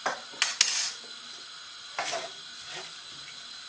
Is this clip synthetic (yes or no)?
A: no